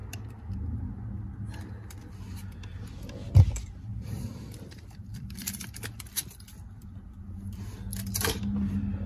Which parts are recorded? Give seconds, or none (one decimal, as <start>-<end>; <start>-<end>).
0.0-3.9; 4.5-5.1; 6.2-9.1